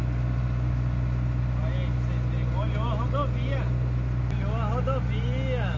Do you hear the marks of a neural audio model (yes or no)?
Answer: no